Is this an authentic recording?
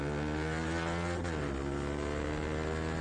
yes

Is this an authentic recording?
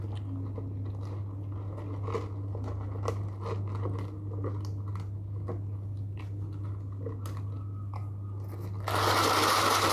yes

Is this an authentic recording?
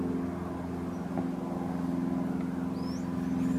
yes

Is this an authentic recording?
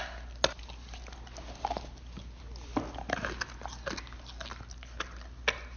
yes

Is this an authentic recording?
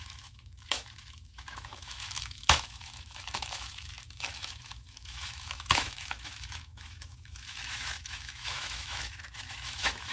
no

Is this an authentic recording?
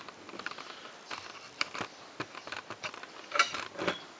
yes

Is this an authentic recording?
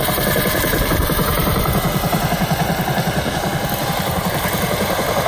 no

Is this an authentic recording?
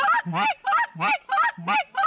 yes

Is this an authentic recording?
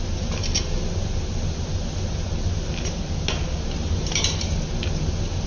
yes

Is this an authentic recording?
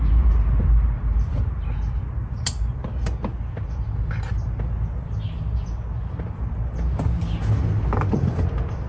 yes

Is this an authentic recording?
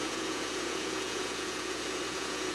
no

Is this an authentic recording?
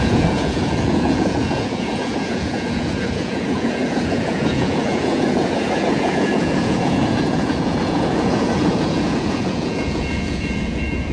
no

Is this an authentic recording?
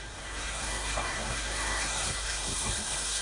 no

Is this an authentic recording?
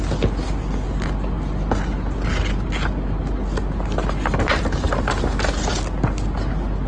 yes